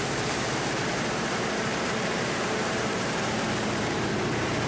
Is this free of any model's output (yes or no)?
no